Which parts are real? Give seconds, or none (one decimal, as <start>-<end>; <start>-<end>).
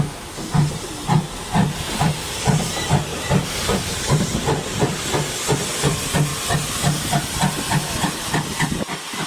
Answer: 0.0-3.1; 5.1-9.3